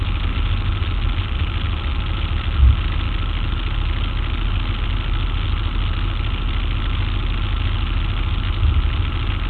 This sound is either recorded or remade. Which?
recorded